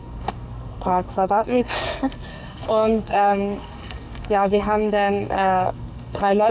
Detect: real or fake fake